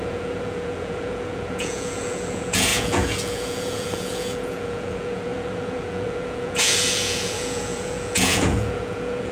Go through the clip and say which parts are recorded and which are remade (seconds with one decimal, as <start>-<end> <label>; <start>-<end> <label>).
0.0-9.3 remade